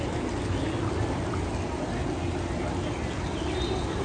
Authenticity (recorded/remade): recorded